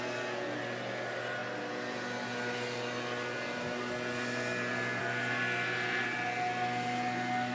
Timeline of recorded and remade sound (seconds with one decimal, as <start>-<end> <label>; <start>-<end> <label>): 0.0-7.5 recorded